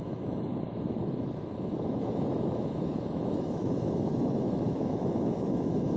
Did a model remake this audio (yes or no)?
yes